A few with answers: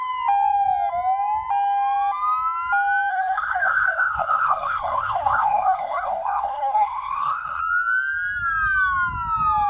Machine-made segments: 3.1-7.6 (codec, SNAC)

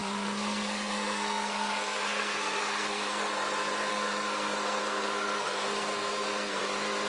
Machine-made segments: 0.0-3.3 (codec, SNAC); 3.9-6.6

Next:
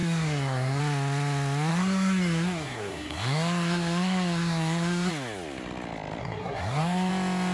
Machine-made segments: 0.0-0.8 (codec, SNAC); 1.7-5.1; 6.2-7.1

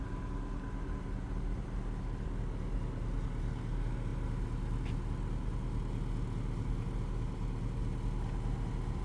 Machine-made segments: none

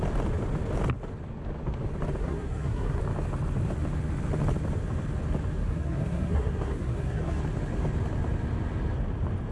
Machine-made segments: 2.2-3.0 (codec, SNAC); 5.6-7.4

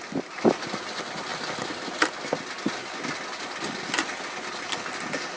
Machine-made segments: none

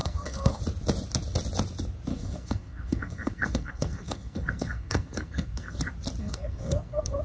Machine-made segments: 0.0-0.6 (codec, SNAC); 2.1-5.8; 6.2-7.2